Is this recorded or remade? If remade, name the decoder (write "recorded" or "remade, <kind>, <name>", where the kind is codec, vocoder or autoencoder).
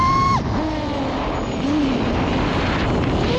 recorded